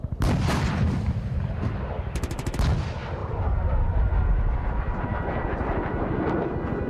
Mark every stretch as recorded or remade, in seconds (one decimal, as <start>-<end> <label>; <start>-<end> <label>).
0.0-3.2 recorded; 3.2-6.5 remade; 6.5-6.9 recorded